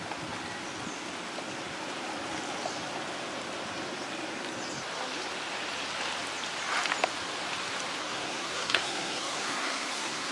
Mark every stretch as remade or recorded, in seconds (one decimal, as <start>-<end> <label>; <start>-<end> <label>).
0.0-8.0 recorded; 8.0-10.3 remade